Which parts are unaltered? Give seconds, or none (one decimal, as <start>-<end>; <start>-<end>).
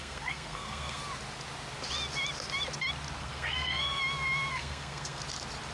1.0-3.2; 4.0-4.5; 5.2-5.7